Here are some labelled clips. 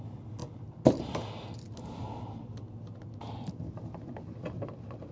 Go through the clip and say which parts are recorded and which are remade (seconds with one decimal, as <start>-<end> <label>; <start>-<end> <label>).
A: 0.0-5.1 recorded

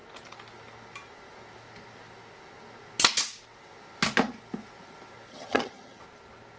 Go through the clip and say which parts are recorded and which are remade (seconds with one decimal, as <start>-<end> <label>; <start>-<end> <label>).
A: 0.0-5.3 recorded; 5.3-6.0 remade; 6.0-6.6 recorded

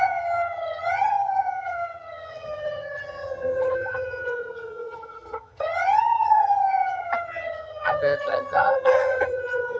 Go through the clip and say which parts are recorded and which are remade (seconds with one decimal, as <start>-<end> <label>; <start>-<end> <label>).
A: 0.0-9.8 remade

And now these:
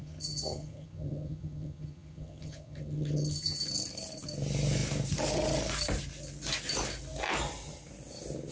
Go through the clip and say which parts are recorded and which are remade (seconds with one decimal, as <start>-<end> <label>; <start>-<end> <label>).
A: 0.0-3.6 remade; 3.6-8.5 recorded

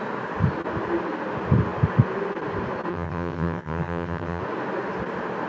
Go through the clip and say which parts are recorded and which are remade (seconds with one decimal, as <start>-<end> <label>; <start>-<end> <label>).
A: 0.0-2.9 recorded; 2.9-4.4 remade; 4.4-5.5 recorded